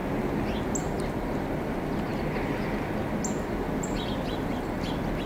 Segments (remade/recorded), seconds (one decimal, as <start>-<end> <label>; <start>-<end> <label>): 0.0-5.3 recorded